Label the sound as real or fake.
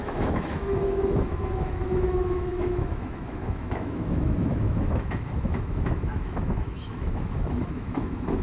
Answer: fake